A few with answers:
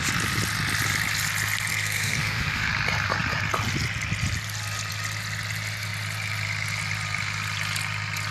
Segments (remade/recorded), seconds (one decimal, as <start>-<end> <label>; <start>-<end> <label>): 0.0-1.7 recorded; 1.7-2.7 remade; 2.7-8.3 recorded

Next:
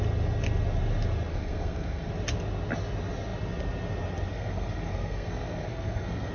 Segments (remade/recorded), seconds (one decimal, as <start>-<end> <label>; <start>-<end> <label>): 0.0-1.3 recorded; 1.3-2.1 remade; 2.1-4.3 recorded; 4.3-6.3 remade

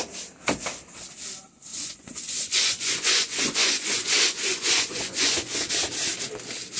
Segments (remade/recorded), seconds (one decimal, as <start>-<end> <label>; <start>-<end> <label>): 0.0-1.7 recorded; 1.7-5.7 remade; 5.7-6.8 recorded

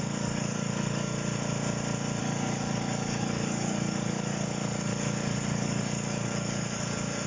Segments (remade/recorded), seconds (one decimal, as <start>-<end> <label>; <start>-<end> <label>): 0.0-1.1 remade; 1.1-2.2 recorded; 2.2-7.3 remade

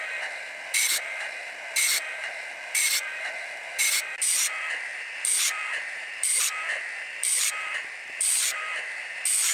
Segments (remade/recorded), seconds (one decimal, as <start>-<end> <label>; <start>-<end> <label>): 0.0-9.5 recorded

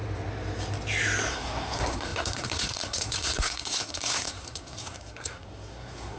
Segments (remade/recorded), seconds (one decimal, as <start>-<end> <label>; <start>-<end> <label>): 0.0-1.3 recorded; 1.3-6.2 remade

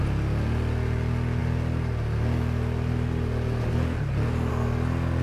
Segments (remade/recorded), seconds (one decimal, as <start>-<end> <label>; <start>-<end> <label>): 0.0-5.2 recorded

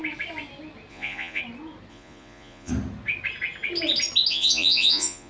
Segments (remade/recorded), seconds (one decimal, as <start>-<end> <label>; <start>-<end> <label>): 0.0-0.9 recorded; 0.9-1.4 remade; 1.4-1.9 recorded; 1.9-2.7 remade; 2.7-4.3 recorded; 4.3-5.3 remade